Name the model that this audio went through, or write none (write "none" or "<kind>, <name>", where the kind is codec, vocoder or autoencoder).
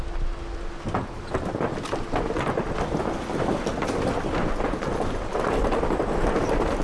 none